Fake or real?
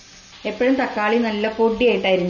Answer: real